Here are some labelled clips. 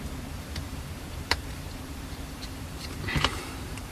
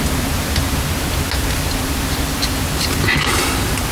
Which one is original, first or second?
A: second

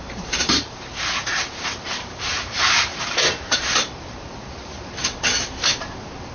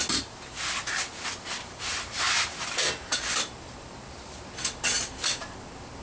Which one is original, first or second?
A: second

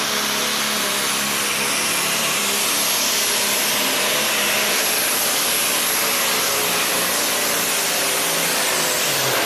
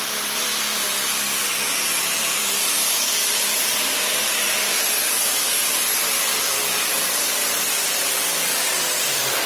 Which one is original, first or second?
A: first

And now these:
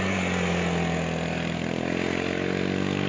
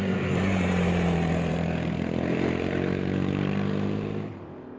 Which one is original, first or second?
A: first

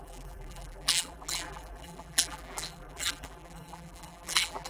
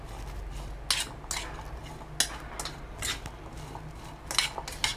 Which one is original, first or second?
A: second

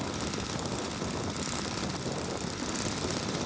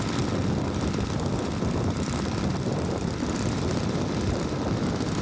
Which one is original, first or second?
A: first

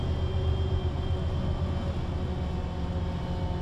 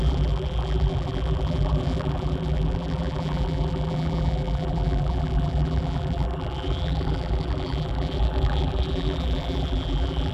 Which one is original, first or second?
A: first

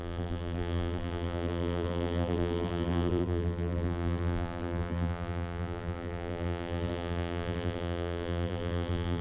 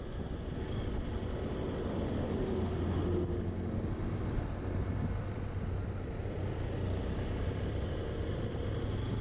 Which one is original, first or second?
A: second